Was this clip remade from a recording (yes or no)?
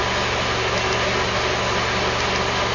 no